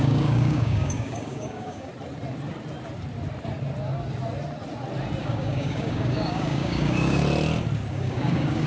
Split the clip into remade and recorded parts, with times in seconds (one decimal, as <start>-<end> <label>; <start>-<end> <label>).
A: 0.0-1.9 remade; 1.9-5.2 recorded; 5.2-7.2 remade; 7.2-7.9 recorded; 7.9-8.7 remade